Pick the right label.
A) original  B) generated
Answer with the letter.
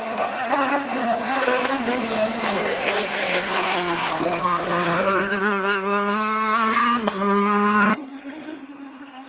B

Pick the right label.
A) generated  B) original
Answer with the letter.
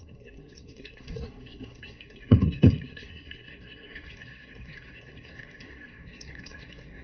A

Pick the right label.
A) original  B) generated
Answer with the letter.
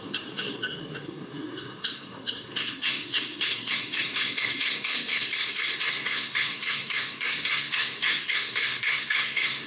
B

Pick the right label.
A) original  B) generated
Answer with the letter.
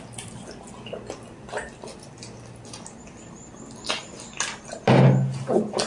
A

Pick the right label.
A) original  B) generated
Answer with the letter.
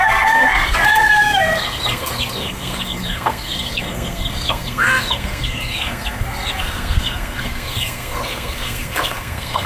B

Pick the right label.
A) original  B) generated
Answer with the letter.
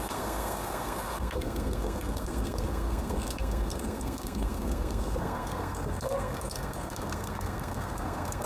B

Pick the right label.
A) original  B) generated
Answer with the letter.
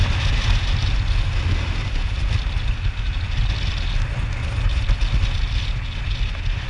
A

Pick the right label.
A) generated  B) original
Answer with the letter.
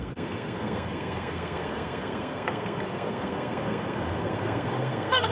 A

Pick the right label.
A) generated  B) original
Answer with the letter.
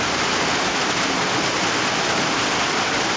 B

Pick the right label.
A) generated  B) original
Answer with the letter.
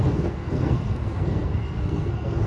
A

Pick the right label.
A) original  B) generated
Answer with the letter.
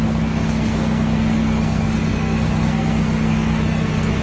B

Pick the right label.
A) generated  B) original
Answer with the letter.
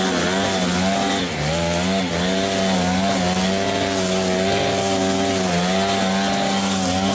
B